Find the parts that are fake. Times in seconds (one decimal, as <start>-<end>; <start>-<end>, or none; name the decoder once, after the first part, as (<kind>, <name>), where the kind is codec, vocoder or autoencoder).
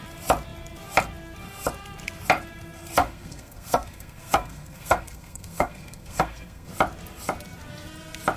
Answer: 3.0-6.7 (codec, SNAC)